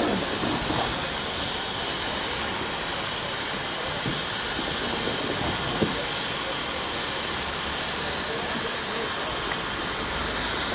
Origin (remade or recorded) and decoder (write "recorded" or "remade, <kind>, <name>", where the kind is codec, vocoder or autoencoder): recorded